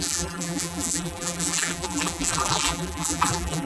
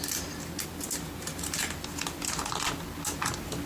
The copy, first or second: first